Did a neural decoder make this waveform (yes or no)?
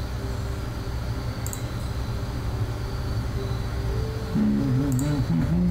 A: no